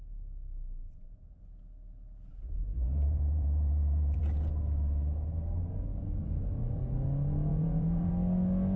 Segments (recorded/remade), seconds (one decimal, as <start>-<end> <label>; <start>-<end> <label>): 0.0-0.8 recorded; 0.8-1.4 remade; 1.4-2.3 recorded; 2.3-4.2 remade; 4.2-7.5 recorded; 7.5-8.1 remade; 8.1-8.8 recorded